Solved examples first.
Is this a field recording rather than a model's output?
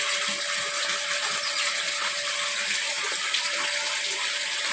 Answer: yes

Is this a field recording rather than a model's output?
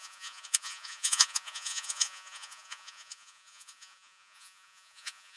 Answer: no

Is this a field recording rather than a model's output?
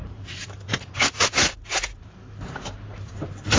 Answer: no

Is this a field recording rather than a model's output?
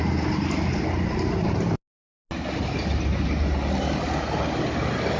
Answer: yes